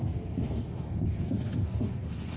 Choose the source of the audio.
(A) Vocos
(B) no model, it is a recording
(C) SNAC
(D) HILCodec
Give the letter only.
C